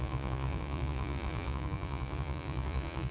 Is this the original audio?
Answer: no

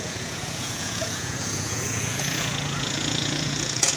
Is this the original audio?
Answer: no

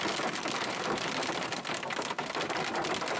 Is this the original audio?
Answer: yes